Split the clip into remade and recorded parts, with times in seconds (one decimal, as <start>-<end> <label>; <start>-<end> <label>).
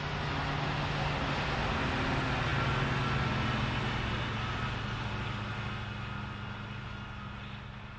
0.0-8.0 recorded